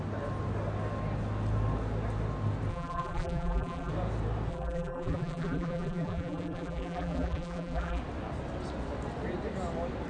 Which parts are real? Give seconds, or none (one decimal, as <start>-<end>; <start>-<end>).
0.0-2.7; 3.9-4.5; 8.0-10.1